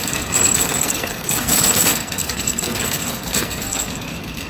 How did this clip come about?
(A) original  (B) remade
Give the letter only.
B